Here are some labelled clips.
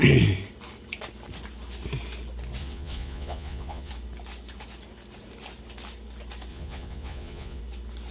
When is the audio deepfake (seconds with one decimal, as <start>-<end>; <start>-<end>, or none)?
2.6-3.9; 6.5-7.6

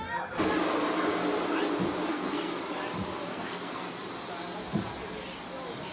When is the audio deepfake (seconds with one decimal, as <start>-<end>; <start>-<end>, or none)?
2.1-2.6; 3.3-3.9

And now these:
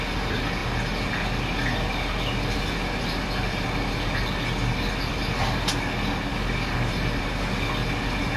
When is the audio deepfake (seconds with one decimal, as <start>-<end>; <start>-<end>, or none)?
6.3-6.9